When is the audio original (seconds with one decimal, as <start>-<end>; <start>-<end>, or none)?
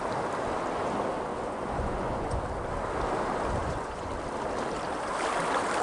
0.0-1.3; 2.4-3.6; 4.1-5.8